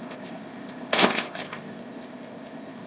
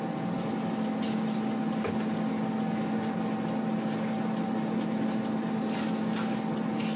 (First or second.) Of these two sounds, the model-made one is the first